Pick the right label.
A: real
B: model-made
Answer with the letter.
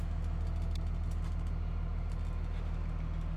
A